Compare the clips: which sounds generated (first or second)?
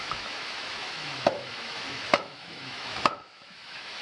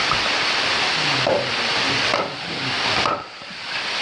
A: first